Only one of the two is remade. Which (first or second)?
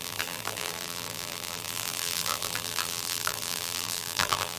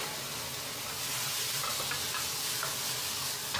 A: first